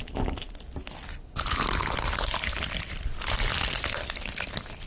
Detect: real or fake real